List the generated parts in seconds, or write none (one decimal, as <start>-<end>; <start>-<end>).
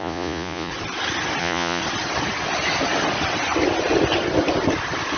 0.0-0.7; 1.4-1.8